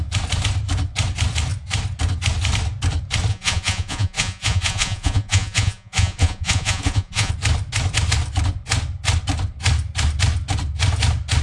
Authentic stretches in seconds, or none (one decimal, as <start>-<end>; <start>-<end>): 0.0-3.3; 7.3-11.4